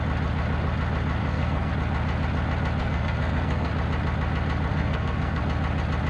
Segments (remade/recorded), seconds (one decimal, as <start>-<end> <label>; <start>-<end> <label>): 0.0-1.2 recorded; 1.2-1.7 remade; 1.7-2.8 recorded; 2.8-3.7 remade; 3.7-4.7 recorded; 4.7-5.4 remade; 5.4-6.1 recorded